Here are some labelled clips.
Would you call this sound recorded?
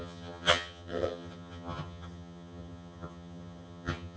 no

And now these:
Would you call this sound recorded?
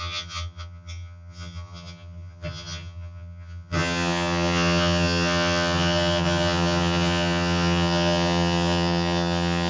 no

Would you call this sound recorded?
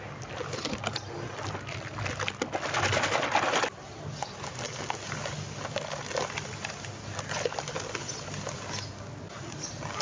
yes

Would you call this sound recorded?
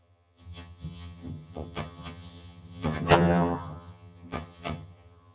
no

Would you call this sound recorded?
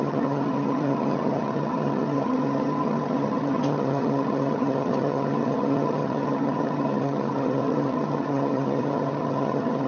no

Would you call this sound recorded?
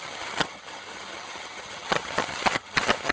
no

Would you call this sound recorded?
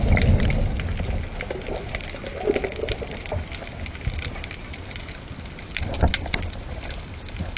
yes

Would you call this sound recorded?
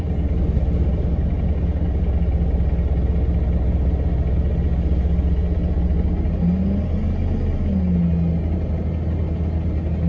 yes